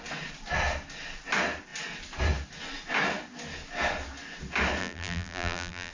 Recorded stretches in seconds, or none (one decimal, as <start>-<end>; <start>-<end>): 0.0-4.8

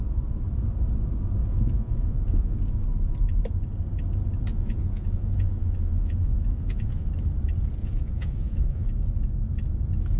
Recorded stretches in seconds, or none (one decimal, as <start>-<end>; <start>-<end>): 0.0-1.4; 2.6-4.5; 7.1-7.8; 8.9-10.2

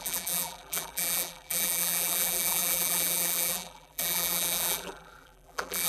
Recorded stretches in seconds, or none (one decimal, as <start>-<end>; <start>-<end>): none